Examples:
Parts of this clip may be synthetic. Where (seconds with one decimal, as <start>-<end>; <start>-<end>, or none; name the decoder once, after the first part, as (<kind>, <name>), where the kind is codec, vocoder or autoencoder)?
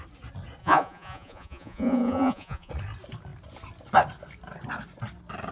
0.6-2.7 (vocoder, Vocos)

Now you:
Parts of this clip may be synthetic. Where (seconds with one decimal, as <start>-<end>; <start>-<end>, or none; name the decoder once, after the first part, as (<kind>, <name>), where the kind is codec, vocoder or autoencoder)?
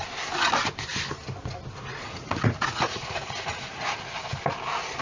1.9-4.0 (vocoder, Vocos)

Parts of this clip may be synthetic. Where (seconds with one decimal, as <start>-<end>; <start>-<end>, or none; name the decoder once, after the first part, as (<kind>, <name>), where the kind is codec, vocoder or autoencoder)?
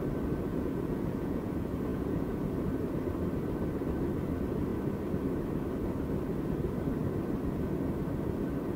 0.5-1.5 (vocoder, Vocos); 1.9-2.5